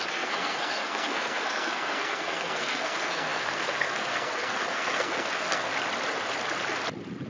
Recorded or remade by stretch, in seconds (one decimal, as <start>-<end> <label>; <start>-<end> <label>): 0.0-5.7 remade; 5.7-7.3 recorded